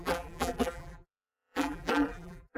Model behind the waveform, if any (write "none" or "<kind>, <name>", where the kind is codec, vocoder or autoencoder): vocoder, BigVGAN v2